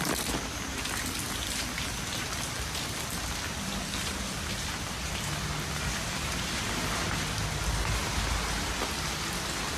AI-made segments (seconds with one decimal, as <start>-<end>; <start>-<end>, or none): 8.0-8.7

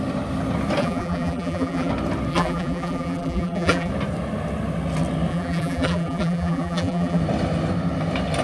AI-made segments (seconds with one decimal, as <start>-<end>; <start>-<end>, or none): 0.8-1.9; 2.3-3.9; 5.3-7.2

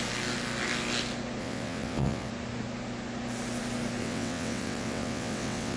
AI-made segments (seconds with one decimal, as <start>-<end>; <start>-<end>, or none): 1.4-2.3; 4.0-5.8